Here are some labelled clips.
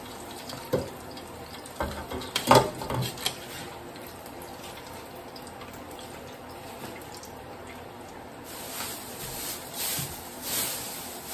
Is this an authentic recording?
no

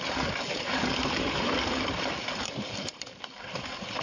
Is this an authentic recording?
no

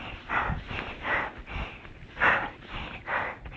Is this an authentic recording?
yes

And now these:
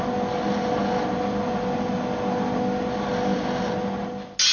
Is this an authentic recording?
yes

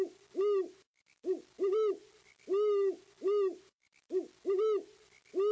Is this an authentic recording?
yes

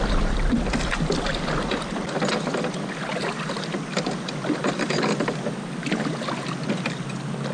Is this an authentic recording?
yes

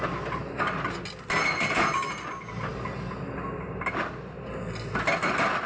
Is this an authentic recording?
yes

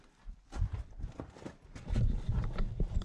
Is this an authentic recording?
yes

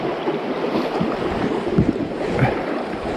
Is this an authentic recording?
no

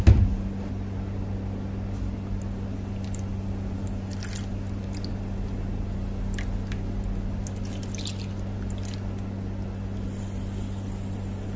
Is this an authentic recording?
yes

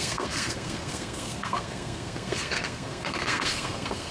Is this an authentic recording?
no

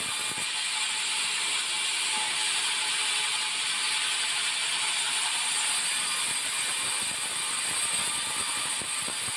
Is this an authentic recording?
yes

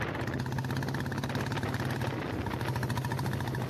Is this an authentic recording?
yes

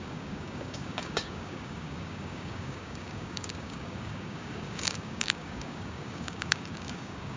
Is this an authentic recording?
no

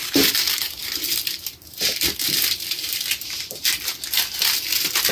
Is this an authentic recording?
no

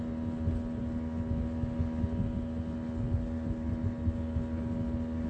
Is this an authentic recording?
yes